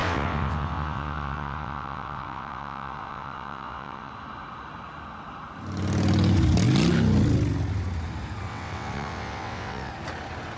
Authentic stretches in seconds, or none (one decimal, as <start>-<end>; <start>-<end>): 4.1-8.5; 9.9-10.6